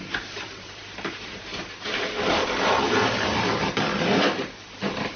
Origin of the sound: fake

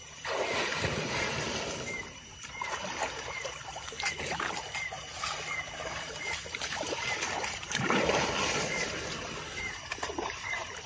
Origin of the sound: fake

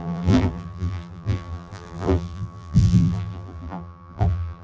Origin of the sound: fake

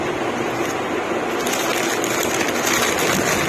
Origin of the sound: real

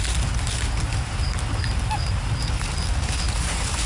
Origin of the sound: real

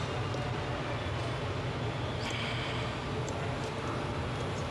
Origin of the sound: real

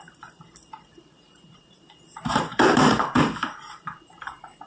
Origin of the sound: fake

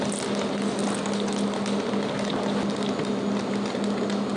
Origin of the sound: real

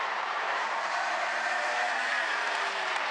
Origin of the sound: fake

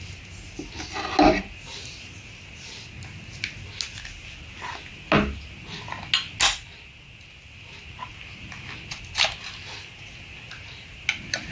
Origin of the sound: real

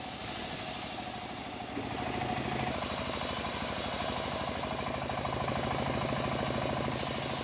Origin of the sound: real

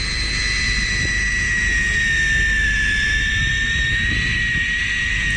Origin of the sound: real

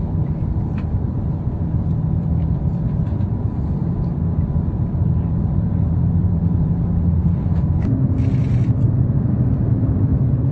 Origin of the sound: fake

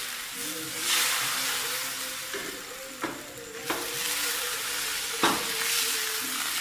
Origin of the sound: real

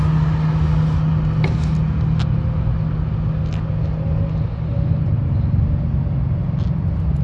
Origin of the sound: real